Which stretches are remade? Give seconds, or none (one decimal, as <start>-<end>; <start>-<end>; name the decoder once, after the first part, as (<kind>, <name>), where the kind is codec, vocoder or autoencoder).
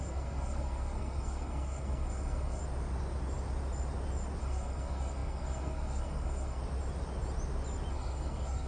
0.0-2.6 (codec, SNAC); 4.4-6.6; 7.9-8.7